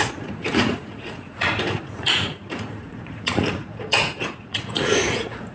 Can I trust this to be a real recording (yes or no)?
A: no